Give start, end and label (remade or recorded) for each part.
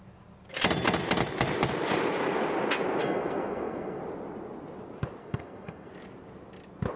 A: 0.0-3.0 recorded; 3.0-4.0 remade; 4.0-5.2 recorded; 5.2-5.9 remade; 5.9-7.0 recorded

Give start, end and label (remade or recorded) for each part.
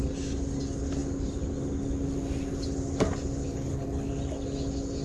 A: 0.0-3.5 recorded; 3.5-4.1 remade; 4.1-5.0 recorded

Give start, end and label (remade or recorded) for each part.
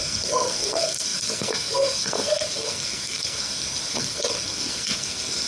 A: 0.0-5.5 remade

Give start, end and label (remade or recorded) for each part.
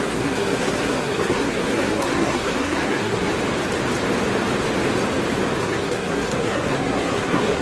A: 0.0-3.3 remade; 3.3-5.6 recorded; 5.6-7.6 remade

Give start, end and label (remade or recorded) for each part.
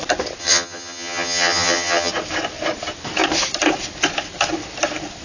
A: 0.0-0.4 recorded; 0.4-2.1 remade; 2.1-5.2 recorded